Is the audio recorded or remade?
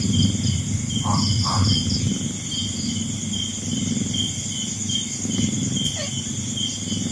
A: recorded